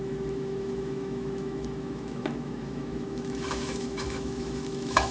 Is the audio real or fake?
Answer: fake